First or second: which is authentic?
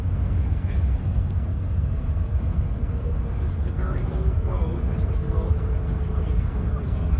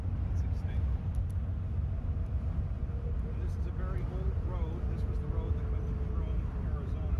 second